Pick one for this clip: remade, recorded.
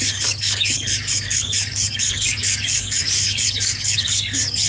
remade